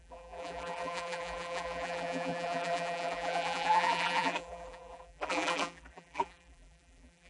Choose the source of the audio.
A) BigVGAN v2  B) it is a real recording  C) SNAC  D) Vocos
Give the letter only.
A